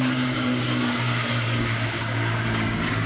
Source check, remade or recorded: remade